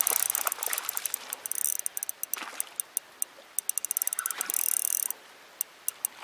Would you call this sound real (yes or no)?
yes